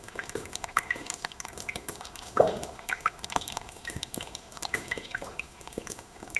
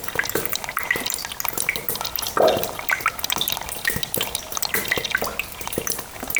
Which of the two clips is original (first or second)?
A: second